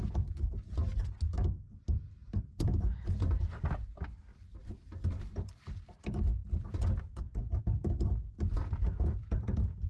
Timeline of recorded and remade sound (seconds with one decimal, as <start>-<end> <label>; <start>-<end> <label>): 0.0-2.2 recorded; 2.2-3.5 remade; 3.5-4.3 recorded; 4.3-5.6 remade; 5.6-6.4 recorded; 6.4-7.6 remade; 7.6-9.9 recorded